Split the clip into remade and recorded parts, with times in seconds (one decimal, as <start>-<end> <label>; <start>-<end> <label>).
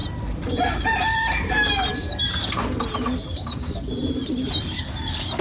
0.0-4.0 remade; 4.0-4.6 recorded; 4.6-5.4 remade